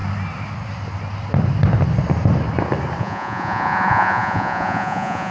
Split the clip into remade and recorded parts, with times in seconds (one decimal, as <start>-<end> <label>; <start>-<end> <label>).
0.0-3.0 recorded; 3.0-5.3 remade